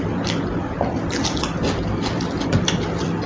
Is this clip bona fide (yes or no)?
yes